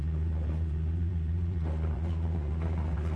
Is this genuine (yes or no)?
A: no